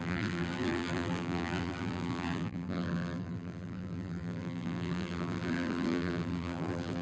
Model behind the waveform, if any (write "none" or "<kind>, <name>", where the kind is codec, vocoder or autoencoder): vocoder, BigVGAN v2